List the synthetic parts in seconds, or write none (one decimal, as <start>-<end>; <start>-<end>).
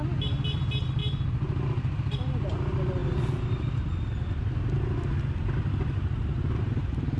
none